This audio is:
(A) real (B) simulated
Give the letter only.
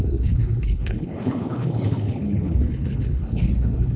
B